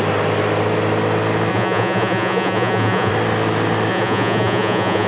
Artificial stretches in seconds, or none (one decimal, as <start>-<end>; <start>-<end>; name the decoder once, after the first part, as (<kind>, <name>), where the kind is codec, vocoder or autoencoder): 1.5-3.1 (vocoder, Vocos); 3.9-5.1